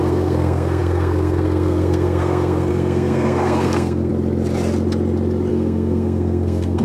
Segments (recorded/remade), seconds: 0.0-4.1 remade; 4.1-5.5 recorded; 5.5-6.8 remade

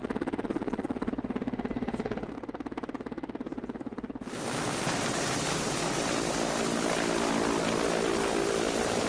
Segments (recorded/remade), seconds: 0.0-1.1 remade; 1.1-9.1 recorded

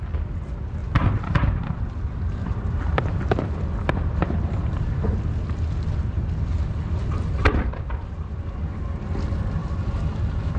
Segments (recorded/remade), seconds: 0.0-0.8 recorded; 0.8-5.2 remade; 5.2-7.5 recorded; 7.5-8.4 remade; 8.4-9.6 recorded; 9.6-10.1 remade; 10.1-10.6 recorded

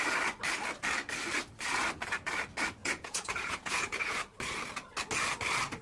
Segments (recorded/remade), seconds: 0.0-2.8 recorded; 2.8-4.2 remade; 4.2-5.8 recorded